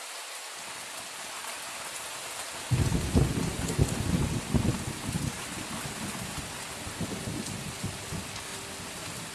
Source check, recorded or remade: recorded